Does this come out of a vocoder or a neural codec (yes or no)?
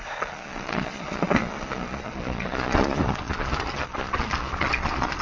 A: yes